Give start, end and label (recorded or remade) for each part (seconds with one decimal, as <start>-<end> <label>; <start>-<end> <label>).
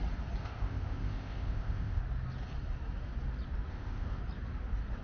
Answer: 0.0-0.4 recorded; 0.4-2.0 remade; 2.0-3.7 recorded; 3.7-4.2 remade; 4.2-5.0 recorded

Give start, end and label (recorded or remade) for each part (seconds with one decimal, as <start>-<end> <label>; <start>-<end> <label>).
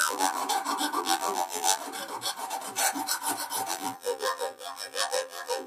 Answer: 0.0-0.4 remade; 0.4-1.0 recorded; 1.0-1.8 remade; 1.8-3.7 recorded; 3.7-5.7 remade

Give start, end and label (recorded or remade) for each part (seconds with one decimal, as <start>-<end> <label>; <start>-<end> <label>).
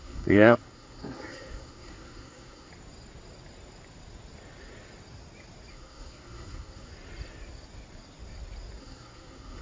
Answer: 0.0-2.7 remade; 2.7-5.7 recorded; 5.7-6.9 remade; 6.9-8.8 recorded; 8.8-9.6 remade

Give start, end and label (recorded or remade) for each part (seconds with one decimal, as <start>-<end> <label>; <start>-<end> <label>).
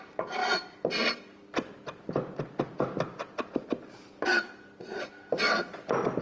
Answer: 0.0-6.2 recorded